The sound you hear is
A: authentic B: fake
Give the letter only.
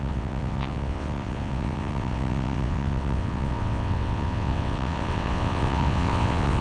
B